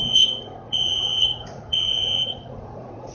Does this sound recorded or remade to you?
remade